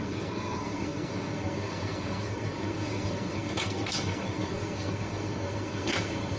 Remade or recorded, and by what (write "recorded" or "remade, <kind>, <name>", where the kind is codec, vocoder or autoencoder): remade, codec, SNAC